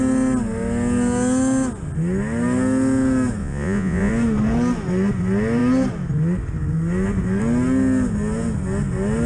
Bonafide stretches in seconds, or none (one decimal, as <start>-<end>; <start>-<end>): 0.0-3.4; 4.1-9.3